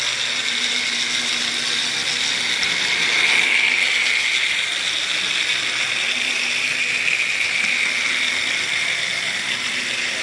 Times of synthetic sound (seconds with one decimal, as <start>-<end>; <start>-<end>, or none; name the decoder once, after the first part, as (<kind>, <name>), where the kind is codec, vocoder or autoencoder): none